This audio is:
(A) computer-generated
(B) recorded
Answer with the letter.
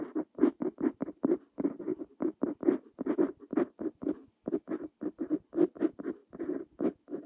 B